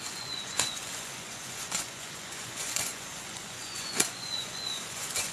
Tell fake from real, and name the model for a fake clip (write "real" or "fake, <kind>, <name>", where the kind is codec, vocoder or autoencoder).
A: fake, vocoder, Vocos